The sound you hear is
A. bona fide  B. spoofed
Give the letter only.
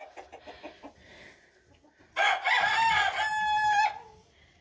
A